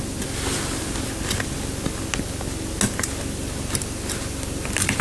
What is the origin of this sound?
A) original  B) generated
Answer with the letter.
A